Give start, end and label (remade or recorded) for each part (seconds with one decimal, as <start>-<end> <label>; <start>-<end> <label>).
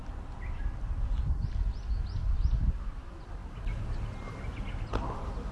0.0-5.5 recorded